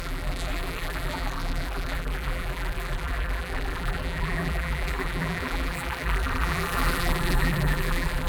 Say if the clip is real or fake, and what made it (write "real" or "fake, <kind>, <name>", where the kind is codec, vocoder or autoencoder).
fake, vocoder, BigVGAN v2